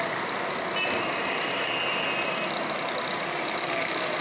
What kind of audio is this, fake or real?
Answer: real